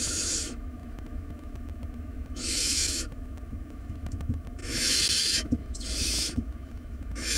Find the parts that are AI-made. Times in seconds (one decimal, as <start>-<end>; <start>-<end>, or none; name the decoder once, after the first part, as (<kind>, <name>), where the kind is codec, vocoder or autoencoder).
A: 0.0-7.4 (autoencoder, DAC-VAE)